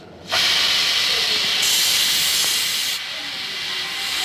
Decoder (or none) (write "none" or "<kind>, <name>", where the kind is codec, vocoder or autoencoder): none